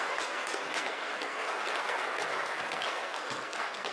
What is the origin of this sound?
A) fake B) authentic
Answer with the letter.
A